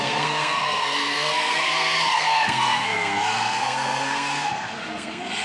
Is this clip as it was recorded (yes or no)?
no